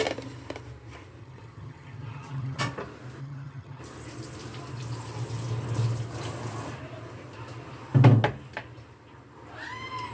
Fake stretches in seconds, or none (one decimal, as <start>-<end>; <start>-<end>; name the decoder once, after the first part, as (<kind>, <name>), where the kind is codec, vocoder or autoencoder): 1.2-2.6 (vocoder, HiFi-GAN); 3.2-3.8